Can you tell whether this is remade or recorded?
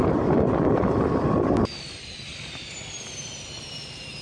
recorded